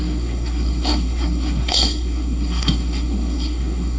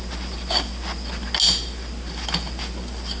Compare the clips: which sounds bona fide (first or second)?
second